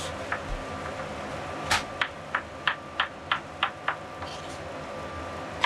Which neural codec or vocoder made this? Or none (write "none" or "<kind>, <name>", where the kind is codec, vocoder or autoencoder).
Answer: none